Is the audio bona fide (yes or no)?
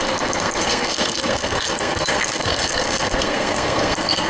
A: no